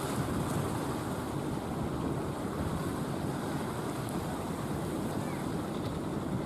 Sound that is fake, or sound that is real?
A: real